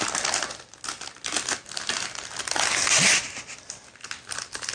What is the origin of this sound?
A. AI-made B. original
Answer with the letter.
B